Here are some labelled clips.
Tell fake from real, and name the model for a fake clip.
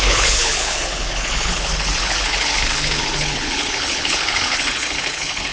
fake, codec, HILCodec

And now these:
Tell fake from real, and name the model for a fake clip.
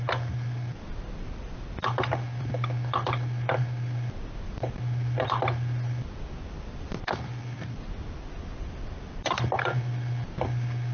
real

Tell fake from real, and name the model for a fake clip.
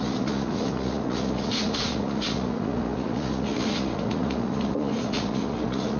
fake, vocoder, Vocos